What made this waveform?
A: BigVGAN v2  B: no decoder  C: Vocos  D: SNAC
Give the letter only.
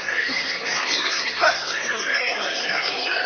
D